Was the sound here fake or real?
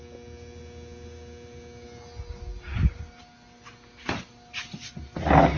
real